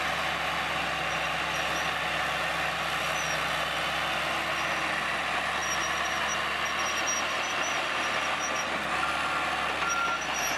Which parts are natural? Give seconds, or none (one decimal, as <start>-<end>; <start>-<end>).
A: 0.0-10.6